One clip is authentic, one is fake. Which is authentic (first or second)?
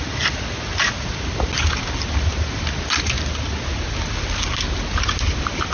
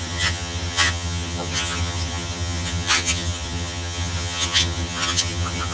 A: first